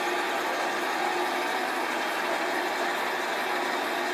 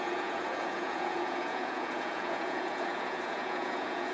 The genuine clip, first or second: first